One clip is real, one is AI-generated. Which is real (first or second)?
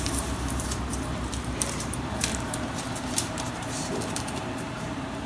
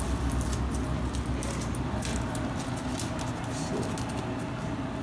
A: second